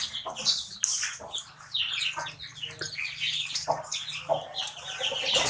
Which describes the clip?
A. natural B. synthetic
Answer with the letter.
A